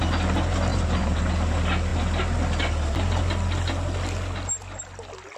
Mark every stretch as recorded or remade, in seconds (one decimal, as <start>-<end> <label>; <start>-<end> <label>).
0.0-0.7 recorded; 0.7-1.2 remade; 1.2-5.4 recorded